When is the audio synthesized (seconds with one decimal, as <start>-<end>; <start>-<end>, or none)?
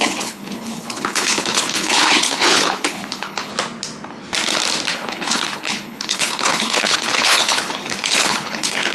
0.0-3.5; 4.9-8.9